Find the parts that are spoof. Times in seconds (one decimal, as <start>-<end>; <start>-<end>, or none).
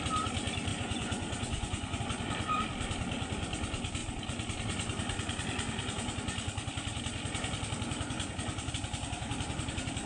0.7-2.0